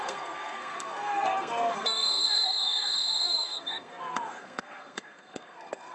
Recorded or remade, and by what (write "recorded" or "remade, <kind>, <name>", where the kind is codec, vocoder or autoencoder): remade, codec, SNAC